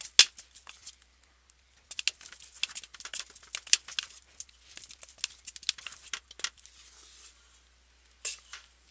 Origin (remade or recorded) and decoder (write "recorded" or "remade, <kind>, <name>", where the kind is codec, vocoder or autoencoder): recorded